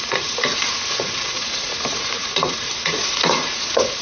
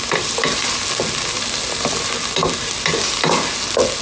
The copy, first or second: first